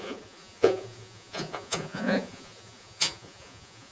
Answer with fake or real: fake